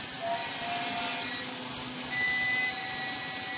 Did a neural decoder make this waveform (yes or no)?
no